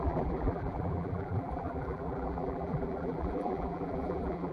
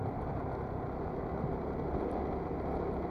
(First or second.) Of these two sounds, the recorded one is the second